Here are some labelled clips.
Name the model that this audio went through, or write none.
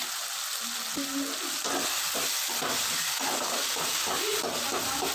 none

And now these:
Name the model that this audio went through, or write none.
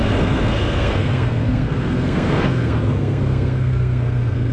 codec, SNAC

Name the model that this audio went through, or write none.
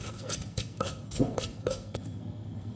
codec, SNAC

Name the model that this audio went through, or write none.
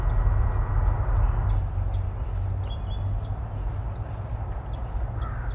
none